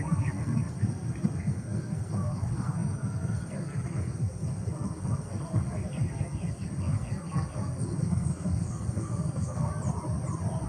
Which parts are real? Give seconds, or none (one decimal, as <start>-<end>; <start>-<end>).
9.7-10.7